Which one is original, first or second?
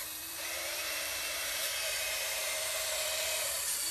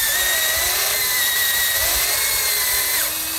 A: second